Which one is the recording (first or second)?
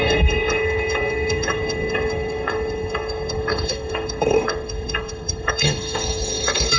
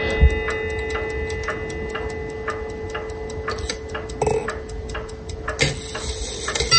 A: second